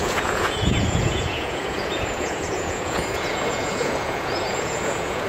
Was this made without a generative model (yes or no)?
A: no